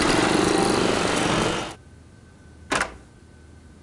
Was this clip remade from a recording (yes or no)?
no